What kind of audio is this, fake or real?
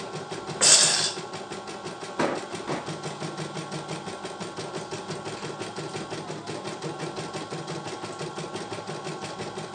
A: real